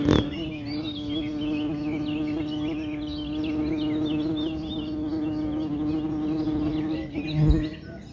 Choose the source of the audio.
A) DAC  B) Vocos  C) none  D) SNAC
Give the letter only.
C